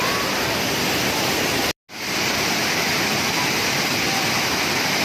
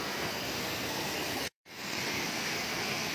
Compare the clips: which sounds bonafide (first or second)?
first